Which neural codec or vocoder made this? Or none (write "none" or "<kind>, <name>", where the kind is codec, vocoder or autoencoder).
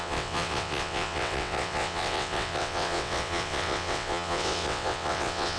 vocoder, WaveNeXt